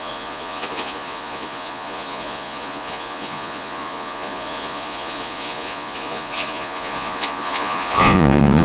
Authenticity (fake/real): fake